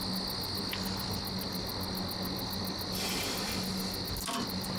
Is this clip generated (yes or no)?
no